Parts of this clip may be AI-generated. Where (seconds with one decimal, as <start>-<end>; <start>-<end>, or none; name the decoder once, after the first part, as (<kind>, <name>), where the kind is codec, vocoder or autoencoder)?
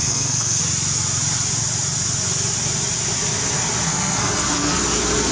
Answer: 0.0-0.6 (codec, SNAC); 3.9-4.8